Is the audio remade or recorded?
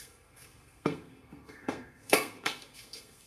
remade